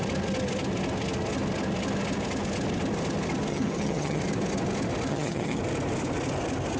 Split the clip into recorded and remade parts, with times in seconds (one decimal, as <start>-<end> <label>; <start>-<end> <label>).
0.0-3.5 recorded; 3.5-4.2 remade; 4.2-5.1 recorded; 5.1-5.6 remade; 5.6-6.8 recorded